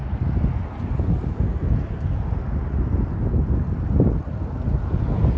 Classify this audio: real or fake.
real